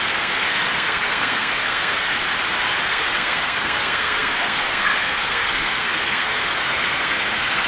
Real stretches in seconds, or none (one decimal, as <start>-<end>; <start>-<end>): 2.2-2.9

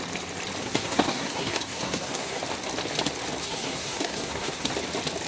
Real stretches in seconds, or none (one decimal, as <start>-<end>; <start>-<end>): 0.0-0.6; 2.4-3.4; 4.7-5.3

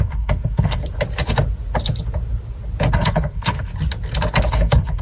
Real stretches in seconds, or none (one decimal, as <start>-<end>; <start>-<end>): 0.8-2.9; 3.7-4.5